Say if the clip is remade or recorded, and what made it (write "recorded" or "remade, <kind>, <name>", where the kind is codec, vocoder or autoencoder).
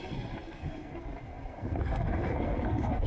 remade, codec, SNAC